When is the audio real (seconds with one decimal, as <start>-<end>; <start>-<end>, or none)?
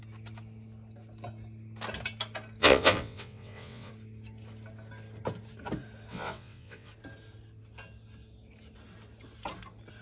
0.0-2.6; 3.9-6.1; 6.9-10.0